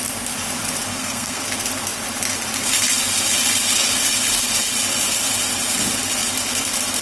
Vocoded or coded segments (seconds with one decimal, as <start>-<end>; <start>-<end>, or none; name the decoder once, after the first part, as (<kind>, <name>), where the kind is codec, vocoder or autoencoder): 0.9-1.4 (codec, SNAC)